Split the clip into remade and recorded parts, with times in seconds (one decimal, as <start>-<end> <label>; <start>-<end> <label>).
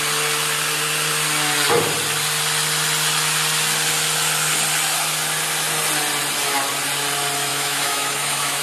0.0-7.5 recorded; 7.5-8.6 remade